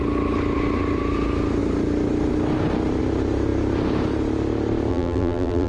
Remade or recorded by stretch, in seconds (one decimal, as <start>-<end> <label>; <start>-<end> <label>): 0.0-4.9 recorded; 4.9-5.7 remade